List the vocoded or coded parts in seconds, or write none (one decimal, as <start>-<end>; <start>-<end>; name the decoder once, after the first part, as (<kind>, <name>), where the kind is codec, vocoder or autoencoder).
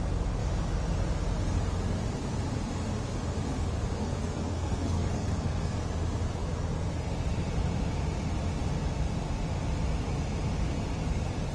3.5-5.8 (codec, SNAC)